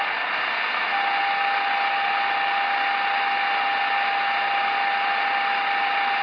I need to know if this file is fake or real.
real